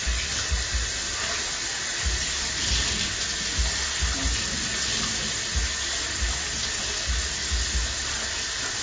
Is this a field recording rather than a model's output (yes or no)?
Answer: yes